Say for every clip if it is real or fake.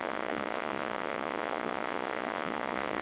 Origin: fake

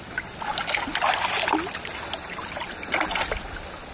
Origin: real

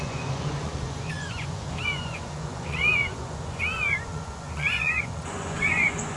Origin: fake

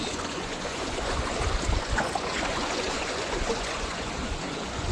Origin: fake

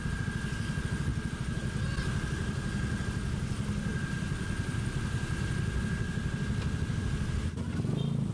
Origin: real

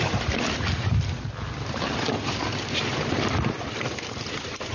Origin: real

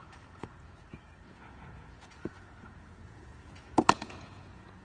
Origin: fake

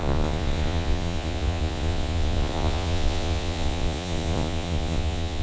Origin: fake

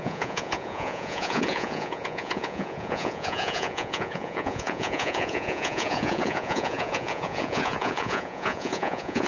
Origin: fake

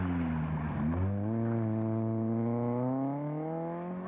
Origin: real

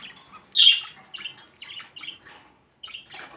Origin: real